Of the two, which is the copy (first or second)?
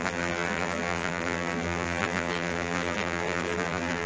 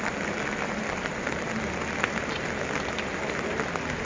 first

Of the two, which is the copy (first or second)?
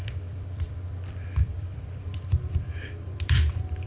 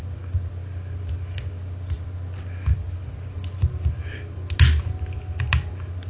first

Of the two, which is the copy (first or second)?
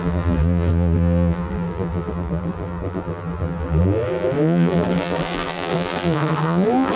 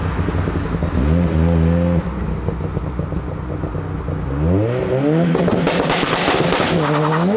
first